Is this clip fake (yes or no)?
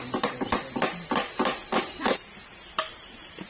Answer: no